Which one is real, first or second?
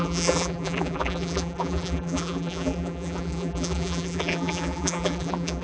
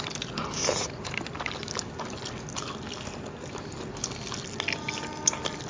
second